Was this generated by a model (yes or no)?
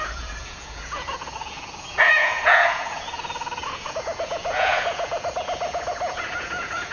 yes